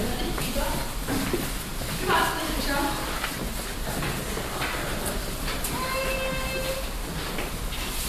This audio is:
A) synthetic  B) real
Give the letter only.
B